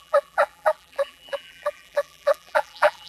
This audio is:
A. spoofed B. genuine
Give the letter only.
A